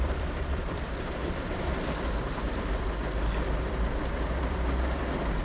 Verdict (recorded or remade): remade